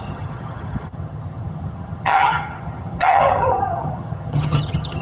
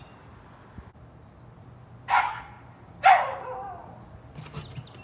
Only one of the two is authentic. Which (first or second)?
second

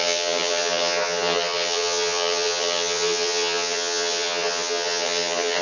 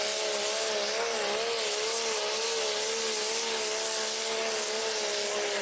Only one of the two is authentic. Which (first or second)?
second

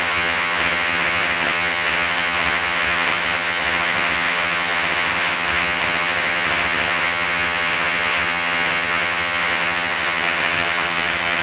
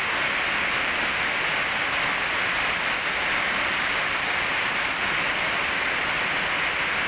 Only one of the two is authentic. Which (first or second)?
second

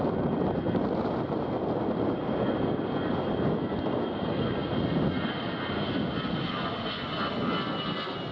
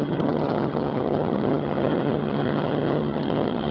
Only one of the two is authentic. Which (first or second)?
first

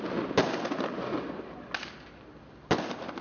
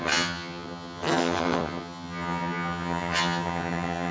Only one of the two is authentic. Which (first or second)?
first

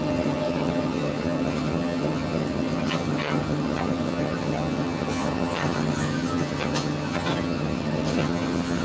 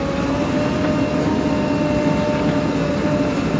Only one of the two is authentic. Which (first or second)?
second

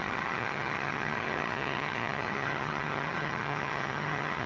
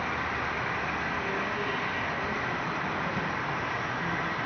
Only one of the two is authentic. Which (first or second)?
second